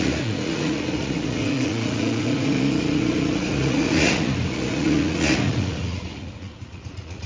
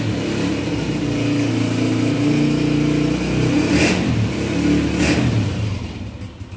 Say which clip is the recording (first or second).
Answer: second